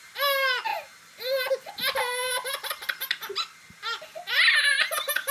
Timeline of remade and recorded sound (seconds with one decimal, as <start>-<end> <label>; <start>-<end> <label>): 0.0-5.3 recorded